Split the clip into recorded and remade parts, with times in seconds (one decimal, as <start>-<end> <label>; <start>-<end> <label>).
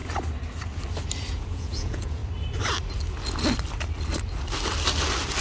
0.0-1.3 recorded; 1.3-2.2 remade; 2.2-5.4 recorded